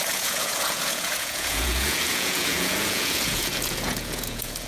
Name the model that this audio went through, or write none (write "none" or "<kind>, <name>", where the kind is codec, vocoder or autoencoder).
vocoder, Vocos